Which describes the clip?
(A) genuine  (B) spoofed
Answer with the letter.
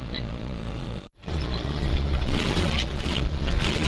B